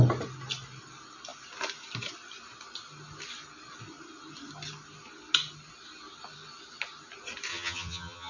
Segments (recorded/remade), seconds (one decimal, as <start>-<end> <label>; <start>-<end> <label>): 0.0-7.5 recorded; 7.5-8.3 remade